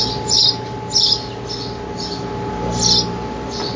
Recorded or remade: recorded